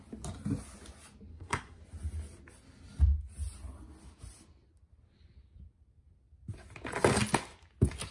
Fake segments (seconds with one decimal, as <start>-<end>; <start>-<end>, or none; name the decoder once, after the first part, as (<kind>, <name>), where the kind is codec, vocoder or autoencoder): 1.3-1.8 (codec, SNAC)